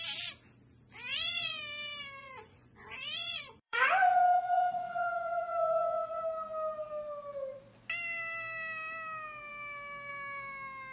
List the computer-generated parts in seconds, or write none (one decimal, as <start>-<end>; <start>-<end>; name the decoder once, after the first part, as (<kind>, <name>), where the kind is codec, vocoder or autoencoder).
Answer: 1.1-1.6 (vocoder, Vocos); 2.2-6.2